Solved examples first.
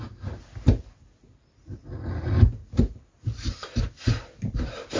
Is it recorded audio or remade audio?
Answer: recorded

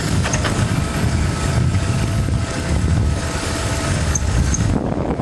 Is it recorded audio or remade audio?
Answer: remade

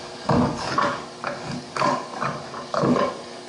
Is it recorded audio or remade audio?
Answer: remade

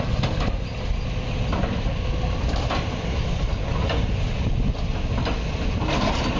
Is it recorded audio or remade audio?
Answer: recorded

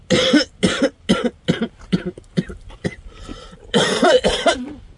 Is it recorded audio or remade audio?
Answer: recorded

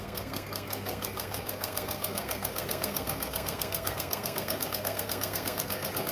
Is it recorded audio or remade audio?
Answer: remade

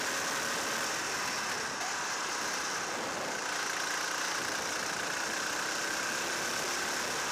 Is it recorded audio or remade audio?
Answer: recorded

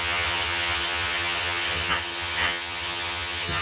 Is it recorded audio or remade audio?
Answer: remade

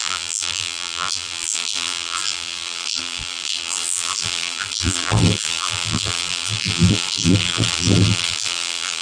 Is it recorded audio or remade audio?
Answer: remade